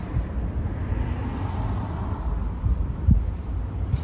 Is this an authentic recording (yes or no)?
yes